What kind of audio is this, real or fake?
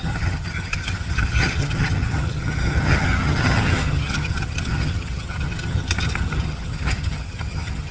fake